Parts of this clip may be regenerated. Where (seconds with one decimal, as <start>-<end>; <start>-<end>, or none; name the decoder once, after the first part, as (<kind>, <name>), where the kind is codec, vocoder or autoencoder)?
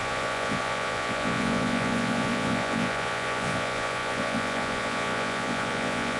0.0-6.2 (vocoder, Vocos)